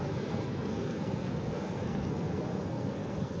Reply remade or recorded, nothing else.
remade